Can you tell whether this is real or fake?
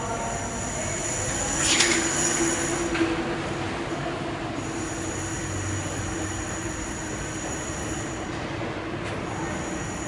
real